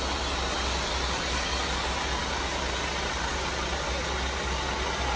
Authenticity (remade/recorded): recorded